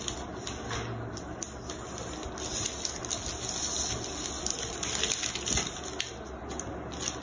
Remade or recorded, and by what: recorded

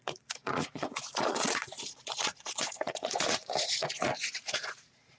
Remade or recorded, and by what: remade, vocoder, Vocos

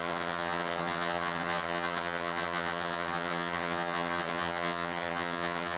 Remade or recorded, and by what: remade, vocoder, HiFi-GAN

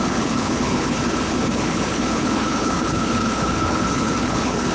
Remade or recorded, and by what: remade, codec, HILCodec